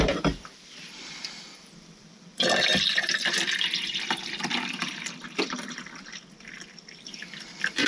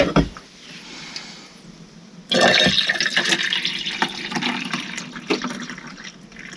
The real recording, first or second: second